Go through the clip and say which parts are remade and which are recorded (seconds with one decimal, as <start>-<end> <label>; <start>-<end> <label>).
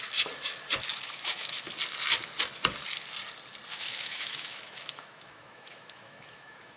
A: 0.0-0.9 recorded; 0.9-1.6 remade; 1.6-3.7 recorded; 3.7-6.8 remade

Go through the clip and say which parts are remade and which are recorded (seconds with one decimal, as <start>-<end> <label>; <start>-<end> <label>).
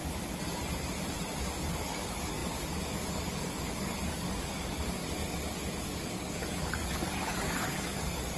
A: 0.0-1.7 recorded; 1.7-5.0 remade; 5.0-5.8 recorded; 5.8-8.4 remade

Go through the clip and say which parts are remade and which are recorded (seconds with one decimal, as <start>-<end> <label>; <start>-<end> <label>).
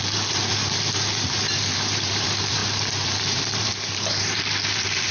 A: 0.0-5.1 remade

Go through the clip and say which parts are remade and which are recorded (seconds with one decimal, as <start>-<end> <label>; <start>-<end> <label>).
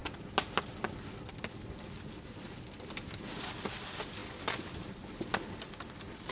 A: 0.0-6.3 recorded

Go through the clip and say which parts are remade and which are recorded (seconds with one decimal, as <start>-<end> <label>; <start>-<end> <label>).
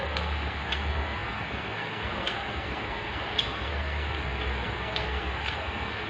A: 0.0-6.1 remade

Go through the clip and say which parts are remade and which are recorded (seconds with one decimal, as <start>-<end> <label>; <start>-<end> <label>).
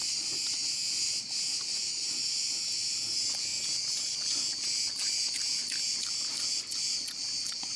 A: 0.0-7.8 recorded